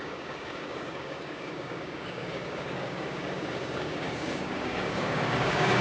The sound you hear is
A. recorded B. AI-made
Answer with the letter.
B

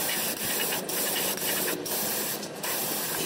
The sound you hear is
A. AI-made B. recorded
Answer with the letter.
B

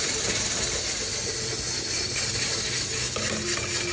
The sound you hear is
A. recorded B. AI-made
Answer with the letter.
A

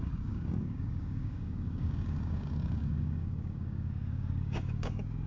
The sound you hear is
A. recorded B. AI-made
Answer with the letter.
B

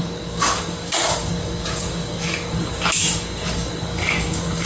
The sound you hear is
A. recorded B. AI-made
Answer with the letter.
B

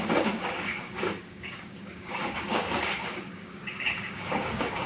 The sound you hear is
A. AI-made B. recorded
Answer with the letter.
A